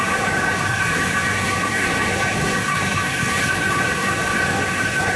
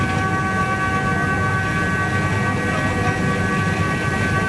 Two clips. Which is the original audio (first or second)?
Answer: second